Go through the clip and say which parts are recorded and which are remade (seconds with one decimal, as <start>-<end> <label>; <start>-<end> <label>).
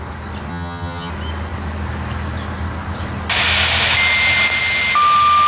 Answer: 0.0-0.5 recorded; 0.5-1.1 remade; 1.1-5.5 recorded